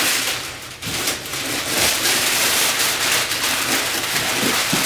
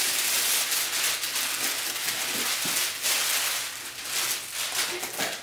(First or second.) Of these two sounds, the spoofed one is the first